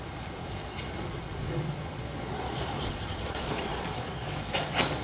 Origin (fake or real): fake